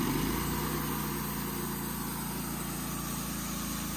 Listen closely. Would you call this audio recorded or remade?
recorded